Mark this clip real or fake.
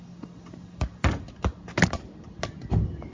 real